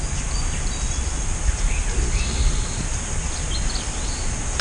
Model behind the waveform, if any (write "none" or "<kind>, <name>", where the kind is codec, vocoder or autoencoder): none